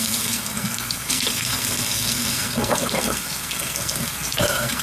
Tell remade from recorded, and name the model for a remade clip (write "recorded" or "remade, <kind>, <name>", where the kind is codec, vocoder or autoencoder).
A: remade, codec, SNAC